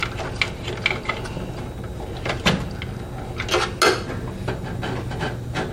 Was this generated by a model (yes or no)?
no